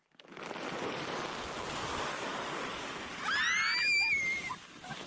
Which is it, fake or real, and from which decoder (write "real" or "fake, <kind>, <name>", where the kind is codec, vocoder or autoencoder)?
real